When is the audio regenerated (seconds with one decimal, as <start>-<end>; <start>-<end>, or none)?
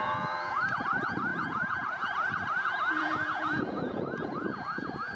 0.0-5.2